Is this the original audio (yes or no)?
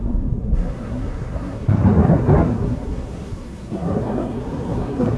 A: no